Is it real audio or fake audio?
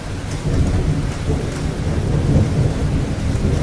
real